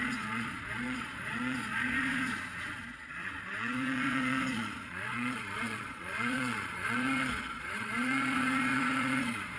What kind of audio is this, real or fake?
fake